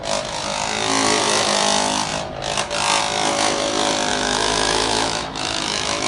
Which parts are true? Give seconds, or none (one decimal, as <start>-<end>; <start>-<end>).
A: 0.0-4.1